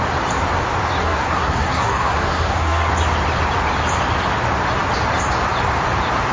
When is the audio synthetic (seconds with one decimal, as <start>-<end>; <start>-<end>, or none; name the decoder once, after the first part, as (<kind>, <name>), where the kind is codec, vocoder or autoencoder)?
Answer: 1.0-2.9 (codec, SNAC)